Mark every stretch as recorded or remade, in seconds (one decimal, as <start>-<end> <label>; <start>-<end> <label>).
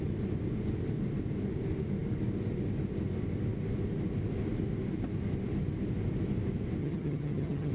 0.0-6.8 recorded; 6.8-7.7 remade